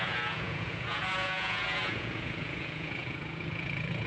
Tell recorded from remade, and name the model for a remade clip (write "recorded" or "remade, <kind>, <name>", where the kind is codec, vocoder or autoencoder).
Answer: remade, vocoder, Vocos